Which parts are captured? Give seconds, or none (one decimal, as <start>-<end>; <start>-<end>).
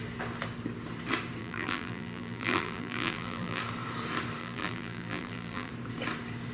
0.0-1.4; 3.6-4.4; 5.7-6.5